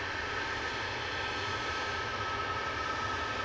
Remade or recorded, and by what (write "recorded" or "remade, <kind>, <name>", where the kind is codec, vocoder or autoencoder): recorded